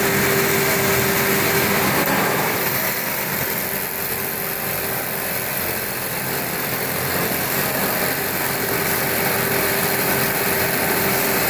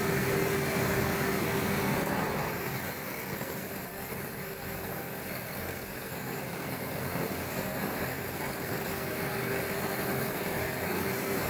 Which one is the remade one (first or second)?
second